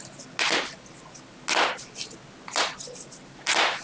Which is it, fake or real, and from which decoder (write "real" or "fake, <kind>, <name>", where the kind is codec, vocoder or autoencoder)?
real